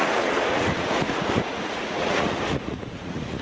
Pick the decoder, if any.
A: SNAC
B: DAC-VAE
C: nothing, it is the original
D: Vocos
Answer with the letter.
D